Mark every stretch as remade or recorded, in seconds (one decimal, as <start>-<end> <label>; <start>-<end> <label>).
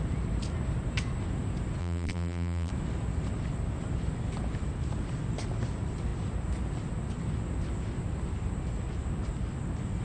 0.0-1.8 recorded; 1.8-2.7 remade; 2.7-10.0 recorded